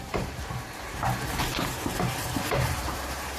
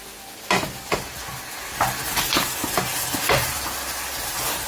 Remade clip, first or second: first